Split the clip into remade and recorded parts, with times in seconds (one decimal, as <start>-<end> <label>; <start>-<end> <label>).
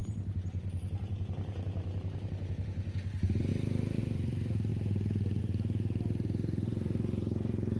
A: 0.0-3.5 remade; 3.5-4.0 recorded; 4.0-4.7 remade; 4.7-5.4 recorded; 5.4-7.8 remade